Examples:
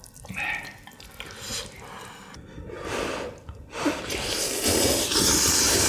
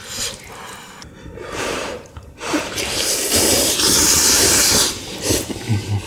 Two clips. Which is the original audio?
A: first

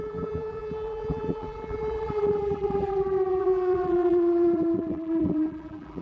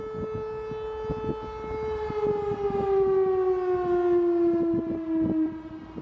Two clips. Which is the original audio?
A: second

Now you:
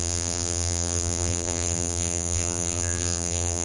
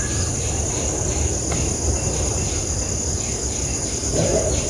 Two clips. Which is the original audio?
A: second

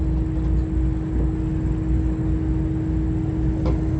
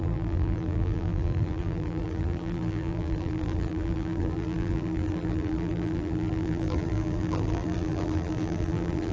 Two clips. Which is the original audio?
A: first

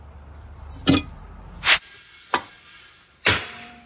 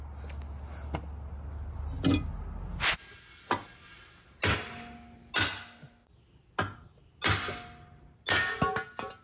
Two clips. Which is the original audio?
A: second